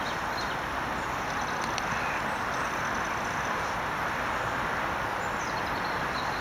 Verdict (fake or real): real